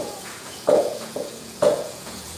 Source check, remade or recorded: remade